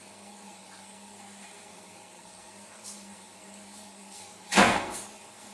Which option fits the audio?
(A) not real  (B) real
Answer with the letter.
A